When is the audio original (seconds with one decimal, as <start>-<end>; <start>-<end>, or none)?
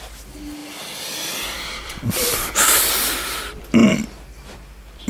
0.0-0.6; 2.9-3.8